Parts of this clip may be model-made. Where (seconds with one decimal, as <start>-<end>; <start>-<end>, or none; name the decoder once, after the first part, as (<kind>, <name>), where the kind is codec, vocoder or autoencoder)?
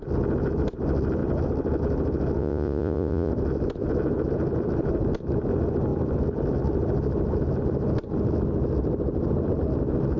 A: 2.4-3.3 (vocoder, Vocos)